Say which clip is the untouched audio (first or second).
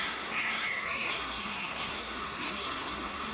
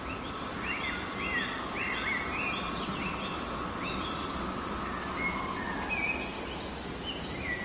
second